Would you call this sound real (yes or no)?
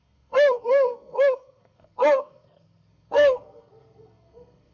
no